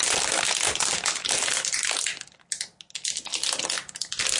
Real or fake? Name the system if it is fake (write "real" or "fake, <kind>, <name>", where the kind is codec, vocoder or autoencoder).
real